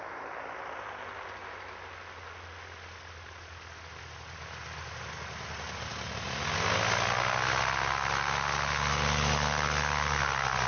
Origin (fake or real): real